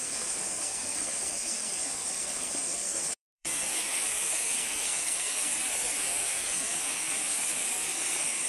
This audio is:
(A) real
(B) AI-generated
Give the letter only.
B